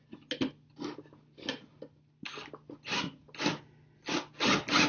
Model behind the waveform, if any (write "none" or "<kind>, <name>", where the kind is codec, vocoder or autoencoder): none